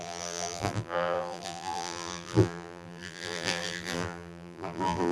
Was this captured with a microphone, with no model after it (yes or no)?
no